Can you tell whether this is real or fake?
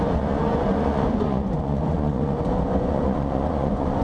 fake